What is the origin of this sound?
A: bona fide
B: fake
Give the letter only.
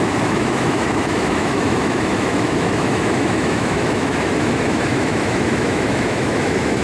B